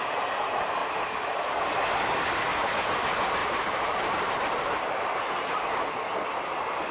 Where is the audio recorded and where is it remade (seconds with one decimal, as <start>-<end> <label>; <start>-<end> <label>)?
0.0-3.4 recorded; 3.4-5.9 remade; 5.9-6.9 recorded